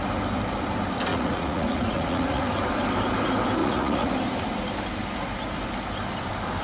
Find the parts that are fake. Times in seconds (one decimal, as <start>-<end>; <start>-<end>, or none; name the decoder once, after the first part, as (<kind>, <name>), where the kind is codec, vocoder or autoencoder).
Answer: 1.1-2.4 (vocoder, Vocos); 3.6-4.1